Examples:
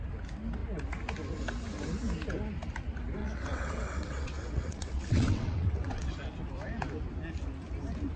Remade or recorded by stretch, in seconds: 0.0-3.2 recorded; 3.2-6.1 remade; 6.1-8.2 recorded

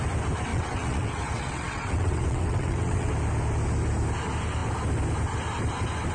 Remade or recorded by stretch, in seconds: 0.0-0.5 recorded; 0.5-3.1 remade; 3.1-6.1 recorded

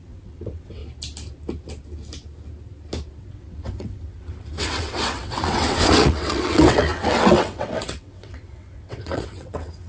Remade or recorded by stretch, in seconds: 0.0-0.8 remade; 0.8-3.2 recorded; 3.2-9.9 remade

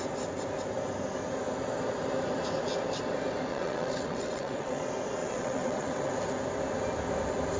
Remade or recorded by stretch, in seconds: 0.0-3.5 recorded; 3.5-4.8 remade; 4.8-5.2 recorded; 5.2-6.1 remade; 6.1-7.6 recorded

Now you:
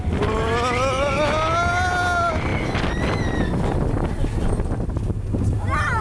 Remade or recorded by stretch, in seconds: 0.0-6.0 recorded

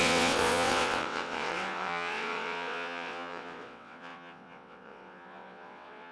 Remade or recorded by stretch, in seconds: 0.0-6.1 remade